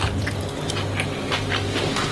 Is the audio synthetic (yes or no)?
no